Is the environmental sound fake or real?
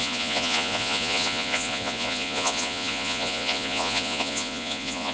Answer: fake